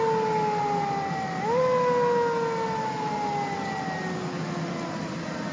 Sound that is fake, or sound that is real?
real